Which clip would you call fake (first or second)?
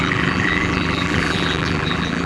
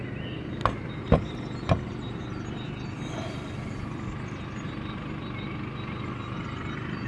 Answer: first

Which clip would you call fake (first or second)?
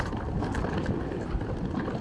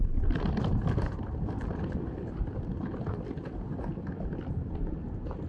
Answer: second